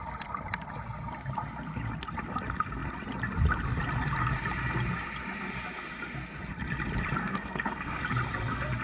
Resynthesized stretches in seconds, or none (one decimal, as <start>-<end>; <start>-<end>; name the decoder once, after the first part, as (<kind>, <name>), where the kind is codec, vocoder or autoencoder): 7.2-8.0 (codec, SNAC)